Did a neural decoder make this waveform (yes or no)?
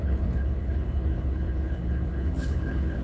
yes